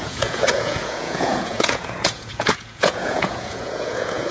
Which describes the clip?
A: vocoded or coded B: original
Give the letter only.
A